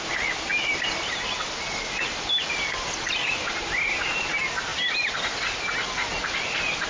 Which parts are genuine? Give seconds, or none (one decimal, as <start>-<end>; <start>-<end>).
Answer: 0.0-0.5; 3.7-4.7; 5.3-6.9